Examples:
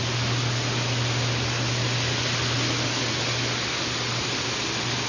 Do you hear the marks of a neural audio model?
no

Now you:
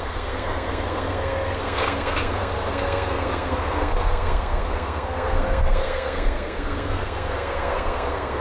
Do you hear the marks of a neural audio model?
yes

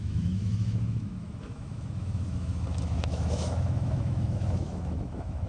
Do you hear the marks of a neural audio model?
yes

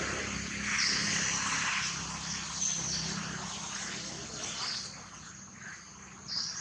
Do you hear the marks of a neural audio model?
no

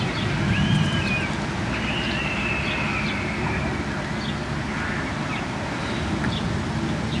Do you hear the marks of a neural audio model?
no